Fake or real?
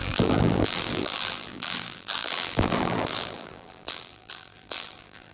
fake